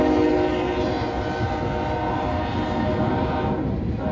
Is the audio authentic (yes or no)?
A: yes